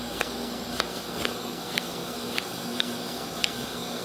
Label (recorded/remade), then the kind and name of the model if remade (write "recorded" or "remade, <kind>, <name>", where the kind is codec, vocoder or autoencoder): remade, codec, SNAC